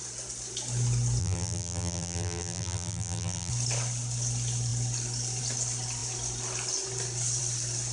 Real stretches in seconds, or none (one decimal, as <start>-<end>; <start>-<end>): 0.0-1.2; 3.5-7.9